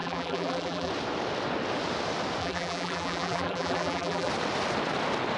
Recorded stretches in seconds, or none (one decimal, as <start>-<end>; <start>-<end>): 0.9-2.4; 4.3-5.4